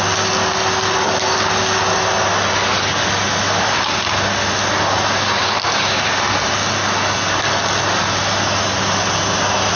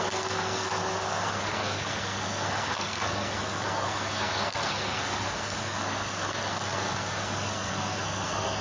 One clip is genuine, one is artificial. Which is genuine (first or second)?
first